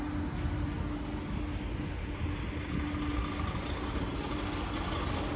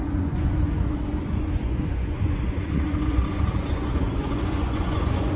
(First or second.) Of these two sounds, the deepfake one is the second